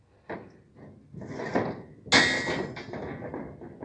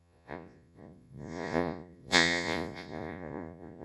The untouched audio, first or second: first